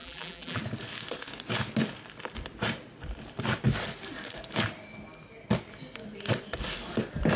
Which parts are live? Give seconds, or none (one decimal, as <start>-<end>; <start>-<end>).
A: 0.6-7.4